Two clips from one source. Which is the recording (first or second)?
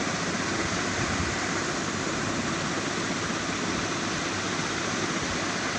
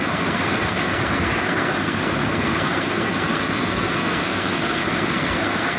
first